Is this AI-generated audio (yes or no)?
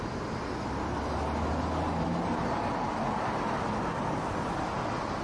no